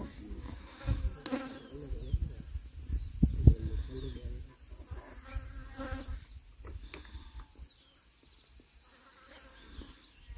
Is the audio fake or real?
real